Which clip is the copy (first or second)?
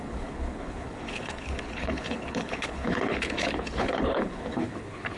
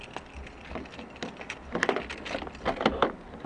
first